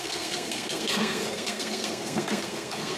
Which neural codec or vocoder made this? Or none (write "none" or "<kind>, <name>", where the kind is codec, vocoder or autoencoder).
codec, SNAC